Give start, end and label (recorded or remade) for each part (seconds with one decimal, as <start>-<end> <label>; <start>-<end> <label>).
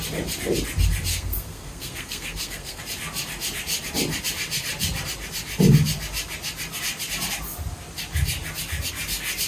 0.0-1.1 recorded; 1.1-2.8 remade; 2.8-9.5 recorded